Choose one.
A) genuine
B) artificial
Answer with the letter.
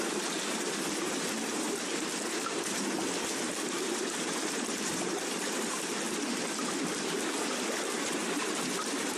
A